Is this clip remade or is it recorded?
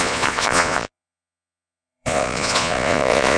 remade